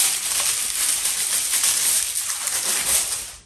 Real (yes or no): yes